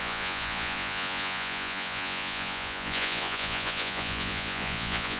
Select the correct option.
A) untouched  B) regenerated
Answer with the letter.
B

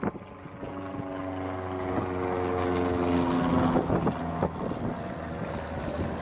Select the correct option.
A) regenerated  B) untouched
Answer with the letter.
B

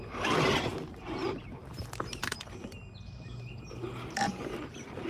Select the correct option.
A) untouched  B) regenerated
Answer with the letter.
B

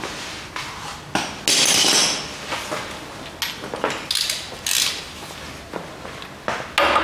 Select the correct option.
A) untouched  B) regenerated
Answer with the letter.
A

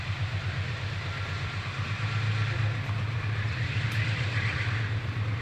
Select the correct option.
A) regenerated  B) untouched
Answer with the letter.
A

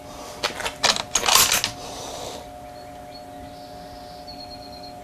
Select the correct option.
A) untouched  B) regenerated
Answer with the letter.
A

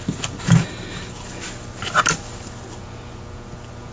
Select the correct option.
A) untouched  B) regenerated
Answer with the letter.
A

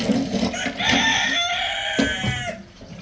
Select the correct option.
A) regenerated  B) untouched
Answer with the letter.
B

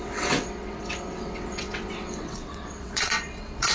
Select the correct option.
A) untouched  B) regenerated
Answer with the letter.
B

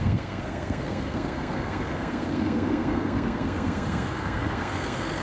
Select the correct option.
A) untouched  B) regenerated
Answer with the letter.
B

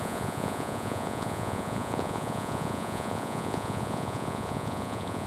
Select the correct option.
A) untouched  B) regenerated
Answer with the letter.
B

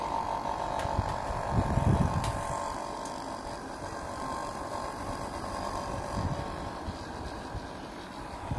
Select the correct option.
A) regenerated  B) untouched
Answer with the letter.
A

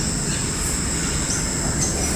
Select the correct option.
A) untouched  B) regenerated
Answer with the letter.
A